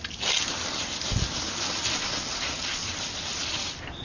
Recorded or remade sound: recorded